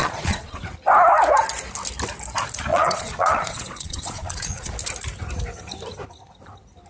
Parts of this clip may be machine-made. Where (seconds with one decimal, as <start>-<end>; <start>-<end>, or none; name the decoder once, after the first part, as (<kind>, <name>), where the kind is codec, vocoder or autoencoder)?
0.0-0.6 (vocoder, Vocos); 2.7-4.7